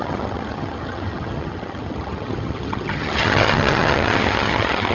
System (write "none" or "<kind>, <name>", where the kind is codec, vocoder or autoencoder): vocoder, HiFi-GAN